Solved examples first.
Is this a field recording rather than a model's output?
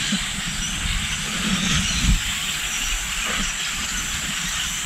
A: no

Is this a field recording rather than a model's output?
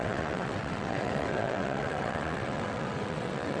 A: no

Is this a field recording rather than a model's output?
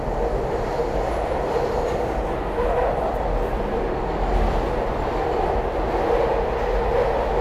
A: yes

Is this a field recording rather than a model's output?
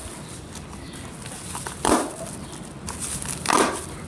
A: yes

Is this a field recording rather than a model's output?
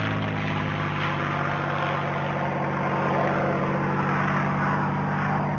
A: yes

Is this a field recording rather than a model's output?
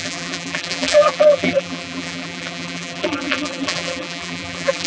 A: no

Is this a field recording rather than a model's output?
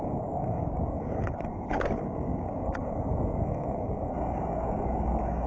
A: no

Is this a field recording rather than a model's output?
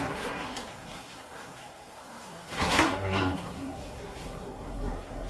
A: no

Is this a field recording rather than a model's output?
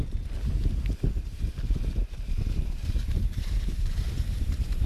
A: no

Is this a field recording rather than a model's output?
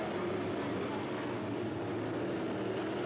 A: yes